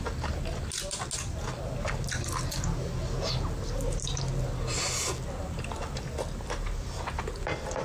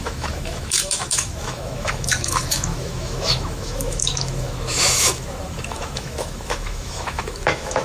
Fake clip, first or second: second